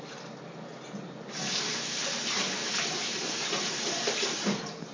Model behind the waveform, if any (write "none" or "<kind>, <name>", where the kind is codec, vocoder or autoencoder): none